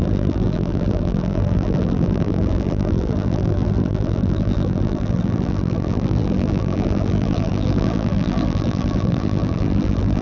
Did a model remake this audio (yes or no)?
yes